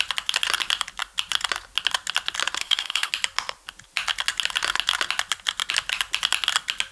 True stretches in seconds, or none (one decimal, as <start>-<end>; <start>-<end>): 0.0-2.6; 3.1-6.9